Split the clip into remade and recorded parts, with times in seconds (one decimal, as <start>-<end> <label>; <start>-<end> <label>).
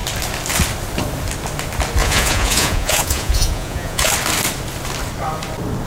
0.0-2.0 recorded; 2.0-4.1 remade; 4.1-5.9 recorded